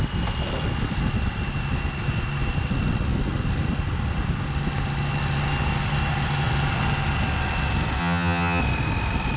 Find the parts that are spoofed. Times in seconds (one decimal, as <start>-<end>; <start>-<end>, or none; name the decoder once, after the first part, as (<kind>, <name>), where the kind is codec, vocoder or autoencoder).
8.0-8.6 (vocoder, HiFi-GAN)